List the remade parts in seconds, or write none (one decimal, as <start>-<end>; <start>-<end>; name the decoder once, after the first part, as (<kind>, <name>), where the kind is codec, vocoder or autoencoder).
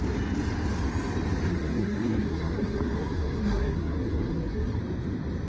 1.5-4.8 (codec, SNAC)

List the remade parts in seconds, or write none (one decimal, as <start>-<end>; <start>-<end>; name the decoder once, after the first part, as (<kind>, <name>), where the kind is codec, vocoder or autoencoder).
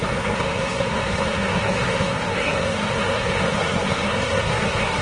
0.0-5.0 (codec, SNAC)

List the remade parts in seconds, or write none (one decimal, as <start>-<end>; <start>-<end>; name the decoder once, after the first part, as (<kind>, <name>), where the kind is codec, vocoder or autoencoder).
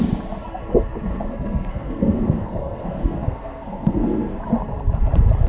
1.1-4.4 (codec, SNAC)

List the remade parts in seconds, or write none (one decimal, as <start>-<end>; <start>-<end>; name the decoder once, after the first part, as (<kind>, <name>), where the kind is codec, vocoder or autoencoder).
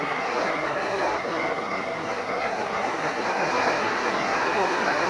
0.0-5.1 (codec, SNAC)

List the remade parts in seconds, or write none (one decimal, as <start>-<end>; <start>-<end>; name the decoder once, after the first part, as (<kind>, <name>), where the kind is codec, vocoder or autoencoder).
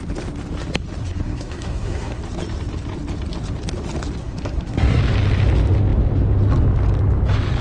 1.0-2.2 (codec, SNAC); 4.2-5.0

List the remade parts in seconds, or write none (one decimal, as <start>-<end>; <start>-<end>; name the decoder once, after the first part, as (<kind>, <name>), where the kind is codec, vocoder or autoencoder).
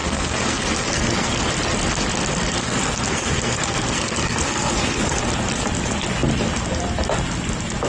0.0-1.4 (codec, SNAC); 2.6-5.2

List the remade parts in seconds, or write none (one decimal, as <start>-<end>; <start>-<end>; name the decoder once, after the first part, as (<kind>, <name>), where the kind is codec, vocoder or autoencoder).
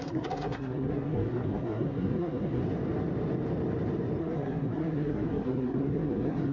0.0-2.6 (codec, SNAC); 4.2-6.5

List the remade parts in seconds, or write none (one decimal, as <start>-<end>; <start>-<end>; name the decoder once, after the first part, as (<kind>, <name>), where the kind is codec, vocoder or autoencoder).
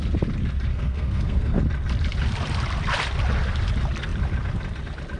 0.7-1.6 (codec, SNAC)